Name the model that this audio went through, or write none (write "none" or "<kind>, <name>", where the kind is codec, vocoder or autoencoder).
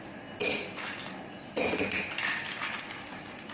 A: none